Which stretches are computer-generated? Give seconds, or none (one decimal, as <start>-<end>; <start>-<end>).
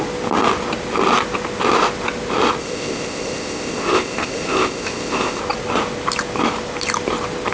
2.6-5.4